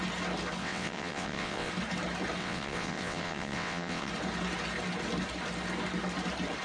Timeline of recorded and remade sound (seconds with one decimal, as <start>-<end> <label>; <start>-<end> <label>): 0.0-0.6 recorded; 0.6-1.7 remade; 1.7-2.4 recorded; 2.4-4.1 remade; 4.1-6.6 recorded